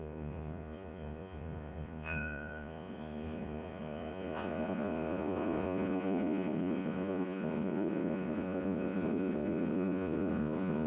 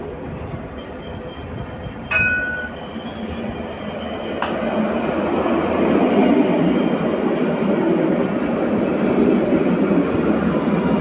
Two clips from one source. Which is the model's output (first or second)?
first